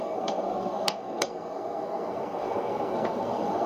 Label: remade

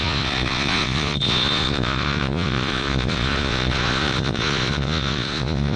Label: remade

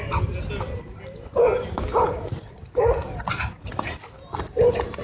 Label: recorded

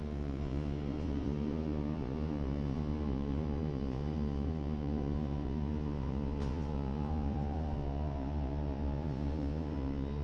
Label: remade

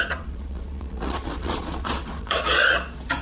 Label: remade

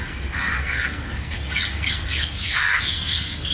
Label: remade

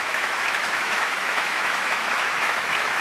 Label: remade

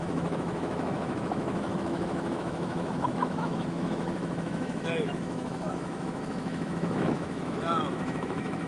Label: remade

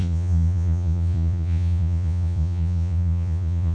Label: remade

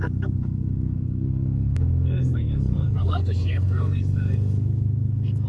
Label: remade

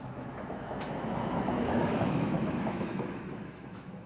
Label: remade